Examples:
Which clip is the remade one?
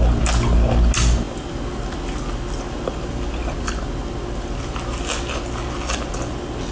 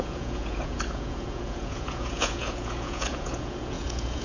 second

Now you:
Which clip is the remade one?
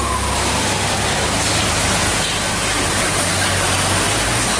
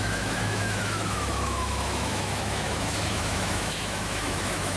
second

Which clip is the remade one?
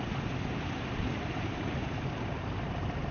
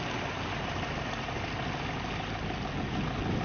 first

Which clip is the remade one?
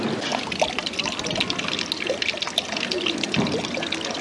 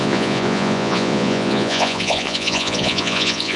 second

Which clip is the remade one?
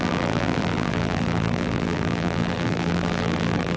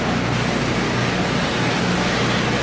first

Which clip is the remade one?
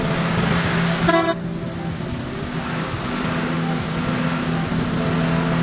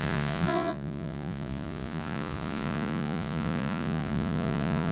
second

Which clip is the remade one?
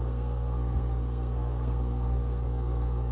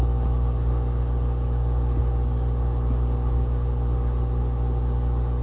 first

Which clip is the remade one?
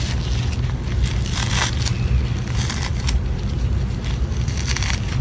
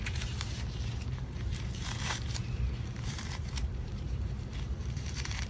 second